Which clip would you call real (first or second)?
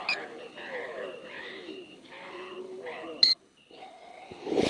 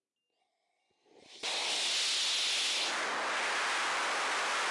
second